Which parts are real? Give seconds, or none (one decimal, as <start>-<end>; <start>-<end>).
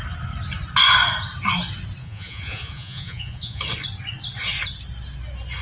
0.0-2.0; 3.6-5.6